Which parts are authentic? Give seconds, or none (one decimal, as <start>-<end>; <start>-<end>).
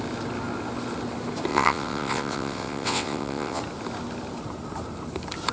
0.0-1.5; 3.6-5.5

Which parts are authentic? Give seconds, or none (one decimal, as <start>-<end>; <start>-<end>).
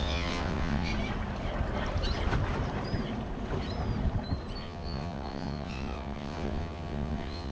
0.9-4.6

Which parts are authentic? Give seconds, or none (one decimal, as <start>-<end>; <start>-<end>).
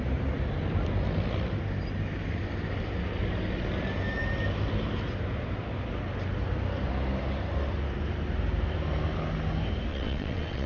0.0-9.9